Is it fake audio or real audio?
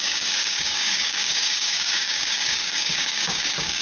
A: fake